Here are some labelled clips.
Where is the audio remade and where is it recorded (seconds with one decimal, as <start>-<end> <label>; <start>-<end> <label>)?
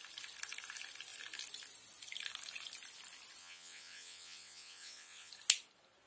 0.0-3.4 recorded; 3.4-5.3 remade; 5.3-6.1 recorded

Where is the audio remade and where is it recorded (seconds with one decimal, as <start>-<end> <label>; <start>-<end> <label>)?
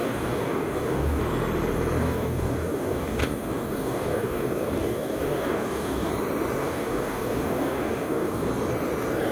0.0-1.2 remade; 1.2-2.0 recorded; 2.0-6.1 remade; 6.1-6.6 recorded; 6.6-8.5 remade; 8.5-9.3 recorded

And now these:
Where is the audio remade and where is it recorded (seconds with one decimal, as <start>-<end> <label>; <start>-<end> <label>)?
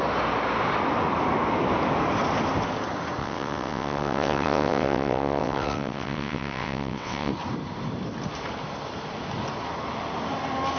0.0-3.2 recorded; 3.2-7.3 remade; 7.3-10.8 recorded